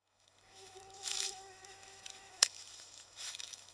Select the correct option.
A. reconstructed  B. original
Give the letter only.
A